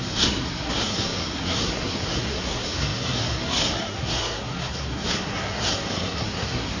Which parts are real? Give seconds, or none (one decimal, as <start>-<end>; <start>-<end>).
none